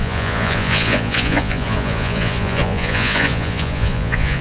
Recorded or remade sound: remade